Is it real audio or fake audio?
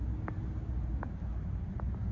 real